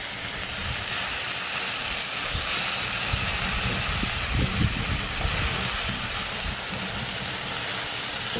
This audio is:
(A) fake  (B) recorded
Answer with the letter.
B